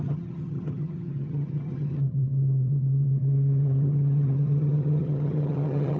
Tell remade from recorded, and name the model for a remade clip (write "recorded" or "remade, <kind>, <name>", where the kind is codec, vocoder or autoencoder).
remade, vocoder, HiFi-GAN